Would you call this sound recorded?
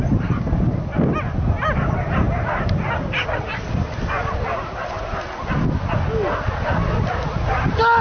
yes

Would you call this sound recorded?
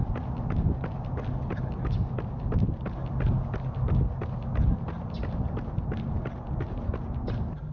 yes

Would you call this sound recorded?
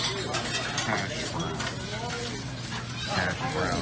yes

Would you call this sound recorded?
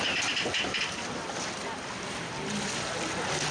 yes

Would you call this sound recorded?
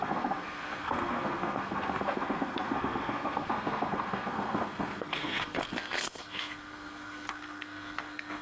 no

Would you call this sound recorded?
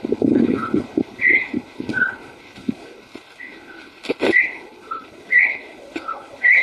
no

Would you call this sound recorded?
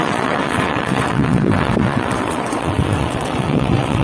no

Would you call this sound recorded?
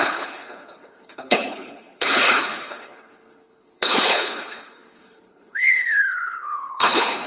no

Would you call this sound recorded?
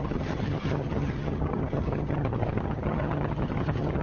no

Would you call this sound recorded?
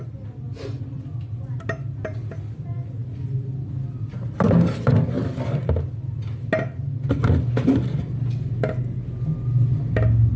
yes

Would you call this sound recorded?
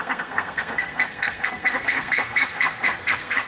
no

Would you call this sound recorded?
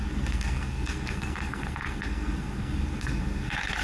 no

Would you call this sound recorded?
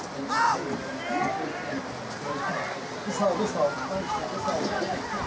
yes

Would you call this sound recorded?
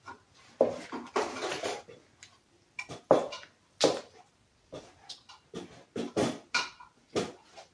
yes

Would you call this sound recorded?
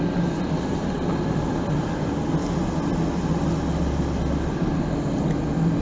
yes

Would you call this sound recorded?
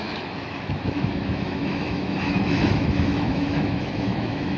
no